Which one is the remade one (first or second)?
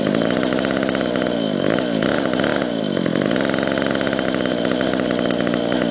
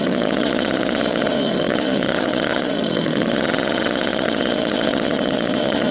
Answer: second